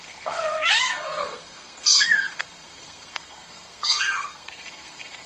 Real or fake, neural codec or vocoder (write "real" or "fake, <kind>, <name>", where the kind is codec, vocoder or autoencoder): fake, codec, SNAC